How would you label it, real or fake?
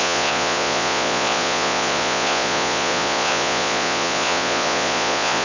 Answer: fake